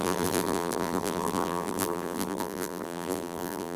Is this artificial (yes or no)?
yes